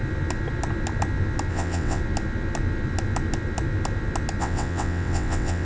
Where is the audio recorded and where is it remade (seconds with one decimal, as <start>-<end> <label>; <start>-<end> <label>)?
0.0-1.5 recorded; 1.5-2.0 remade; 2.0-4.4 recorded; 4.4-5.7 remade